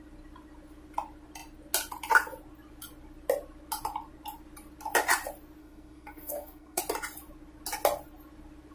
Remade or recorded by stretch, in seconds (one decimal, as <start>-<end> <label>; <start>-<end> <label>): 0.0-5.6 recorded; 5.6-6.8 remade; 6.8-8.7 recorded